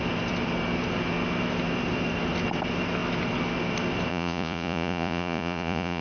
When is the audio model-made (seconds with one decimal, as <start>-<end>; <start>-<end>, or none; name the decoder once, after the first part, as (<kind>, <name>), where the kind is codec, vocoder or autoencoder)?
4.1-6.0 (vocoder, Vocos)